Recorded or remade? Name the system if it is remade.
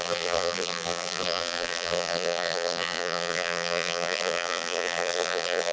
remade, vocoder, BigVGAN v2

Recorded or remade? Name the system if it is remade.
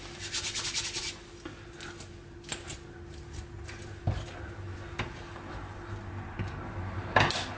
recorded